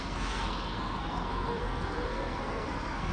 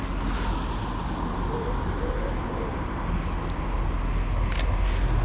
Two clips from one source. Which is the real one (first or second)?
second